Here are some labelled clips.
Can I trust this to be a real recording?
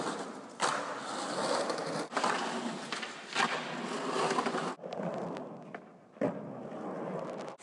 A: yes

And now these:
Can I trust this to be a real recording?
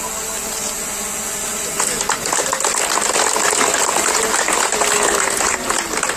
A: yes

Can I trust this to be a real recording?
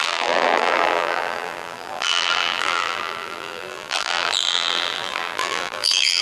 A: no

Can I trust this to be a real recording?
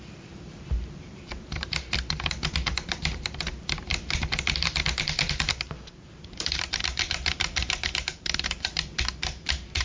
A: no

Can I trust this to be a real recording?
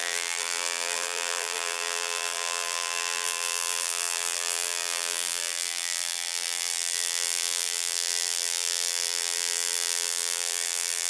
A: no